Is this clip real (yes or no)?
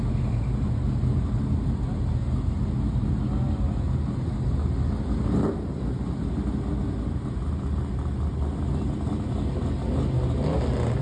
yes